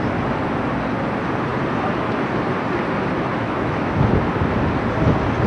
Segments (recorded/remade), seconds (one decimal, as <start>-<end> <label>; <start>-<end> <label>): 0.0-3.3 recorded; 3.3-3.9 remade; 3.9-5.5 recorded